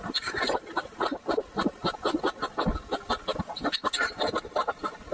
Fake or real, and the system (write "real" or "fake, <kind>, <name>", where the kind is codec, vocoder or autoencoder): real